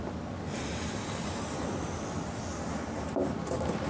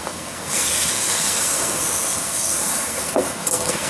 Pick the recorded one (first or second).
first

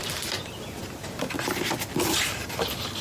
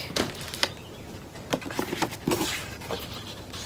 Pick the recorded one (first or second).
first